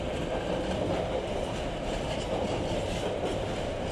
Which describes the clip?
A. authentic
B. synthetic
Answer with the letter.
A